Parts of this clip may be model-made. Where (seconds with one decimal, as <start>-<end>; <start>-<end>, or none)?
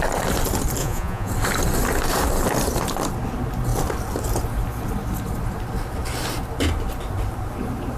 0.8-1.3